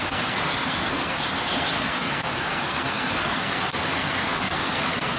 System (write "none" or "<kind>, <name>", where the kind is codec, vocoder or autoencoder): codec, SNAC